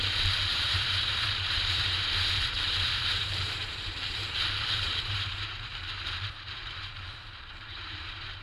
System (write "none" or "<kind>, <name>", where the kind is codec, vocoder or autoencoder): vocoder, BigVGAN v2